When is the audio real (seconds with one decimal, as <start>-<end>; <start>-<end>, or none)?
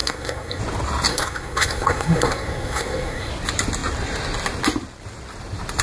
0.6-1.1; 3.3-5.8